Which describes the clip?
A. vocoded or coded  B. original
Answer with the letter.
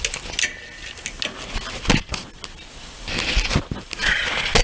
B